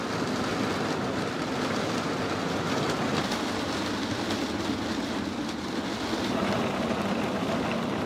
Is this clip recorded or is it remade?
recorded